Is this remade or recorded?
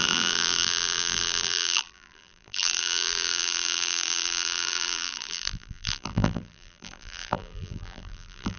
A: remade